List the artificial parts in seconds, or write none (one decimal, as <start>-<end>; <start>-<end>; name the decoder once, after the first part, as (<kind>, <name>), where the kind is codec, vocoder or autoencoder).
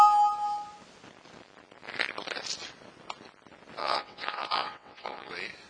3.8-5.3 (vocoder, WaveNeXt)